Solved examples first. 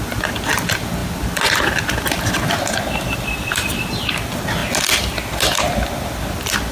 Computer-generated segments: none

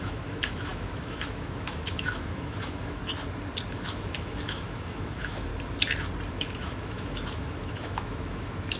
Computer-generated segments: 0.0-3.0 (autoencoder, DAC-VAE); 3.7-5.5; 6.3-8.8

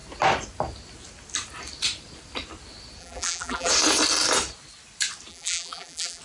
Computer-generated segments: 3.0-3.7 (vocoder, BigVGAN v2); 5.3-6.2